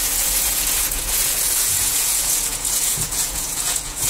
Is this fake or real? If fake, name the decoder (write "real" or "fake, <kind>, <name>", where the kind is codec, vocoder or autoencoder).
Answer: fake, vocoder, Vocos